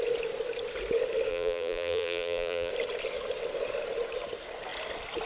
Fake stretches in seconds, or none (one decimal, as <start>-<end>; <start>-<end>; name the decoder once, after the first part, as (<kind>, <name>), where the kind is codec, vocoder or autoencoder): 1.3-2.7 (vocoder, BigVGAN v2)